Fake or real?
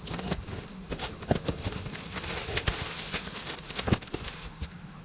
fake